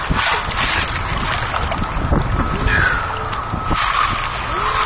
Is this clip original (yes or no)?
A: yes